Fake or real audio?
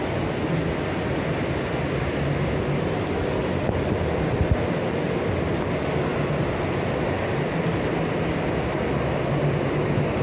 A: real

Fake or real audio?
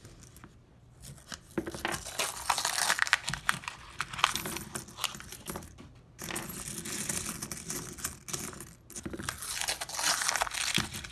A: real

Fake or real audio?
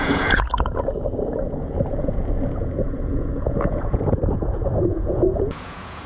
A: fake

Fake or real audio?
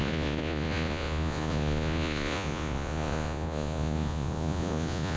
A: fake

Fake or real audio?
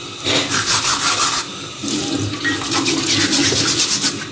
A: real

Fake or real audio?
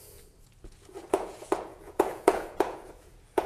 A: fake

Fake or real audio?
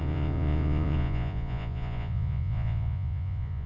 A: fake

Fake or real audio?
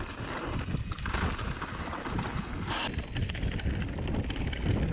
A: real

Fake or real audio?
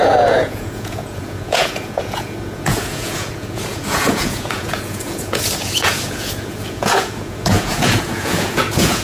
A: fake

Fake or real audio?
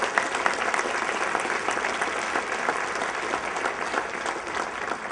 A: real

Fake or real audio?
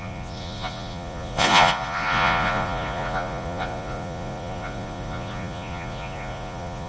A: fake